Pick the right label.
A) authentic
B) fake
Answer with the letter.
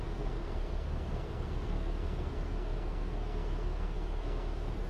B